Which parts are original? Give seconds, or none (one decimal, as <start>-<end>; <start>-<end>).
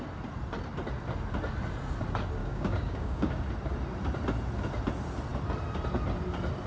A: 0.0-2.4; 3.4-6.7